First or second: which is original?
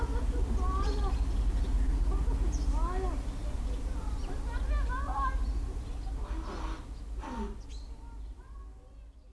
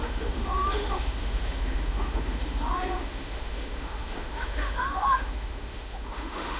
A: first